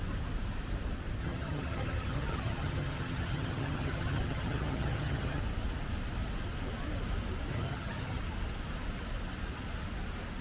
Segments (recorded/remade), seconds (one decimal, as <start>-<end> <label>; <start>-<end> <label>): 0.0-1.2 recorded; 1.2-5.4 remade; 5.4-7.5 recorded; 7.5-8.2 remade; 8.2-10.4 recorded